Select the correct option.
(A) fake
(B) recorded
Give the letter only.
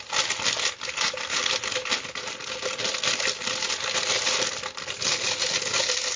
B